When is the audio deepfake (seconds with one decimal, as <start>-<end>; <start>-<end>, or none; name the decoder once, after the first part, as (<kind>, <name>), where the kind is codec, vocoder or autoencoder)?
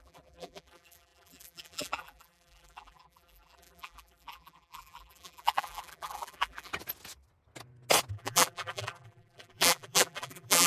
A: 0.0-6.7 (vocoder, BigVGAN v2); 8.1-10.7